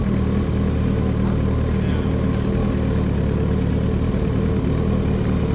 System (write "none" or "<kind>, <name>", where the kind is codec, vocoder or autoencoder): none